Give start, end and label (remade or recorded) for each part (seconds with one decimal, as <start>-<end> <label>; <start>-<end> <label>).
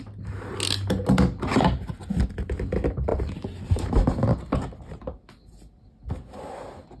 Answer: 0.0-7.0 recorded